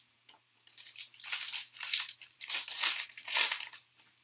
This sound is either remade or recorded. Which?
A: remade